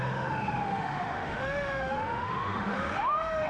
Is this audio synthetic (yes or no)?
yes